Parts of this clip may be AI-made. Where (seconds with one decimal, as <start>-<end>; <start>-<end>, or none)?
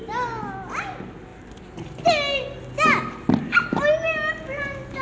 none